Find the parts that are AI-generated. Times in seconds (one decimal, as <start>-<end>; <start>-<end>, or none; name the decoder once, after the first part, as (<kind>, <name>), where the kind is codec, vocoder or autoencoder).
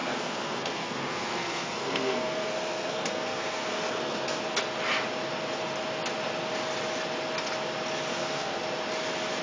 0.0-4.4 (codec, SNAC); 8.1-8.6